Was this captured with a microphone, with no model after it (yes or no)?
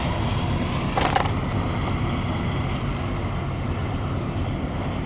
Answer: yes